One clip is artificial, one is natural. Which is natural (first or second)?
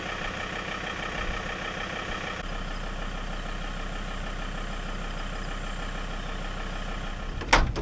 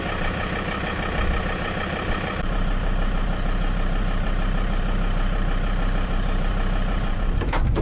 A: first